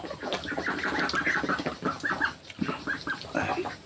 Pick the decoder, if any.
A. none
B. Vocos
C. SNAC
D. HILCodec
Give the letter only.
A